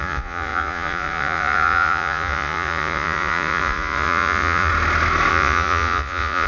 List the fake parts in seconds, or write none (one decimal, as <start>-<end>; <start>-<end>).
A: 0.0-4.7; 5.3-6.5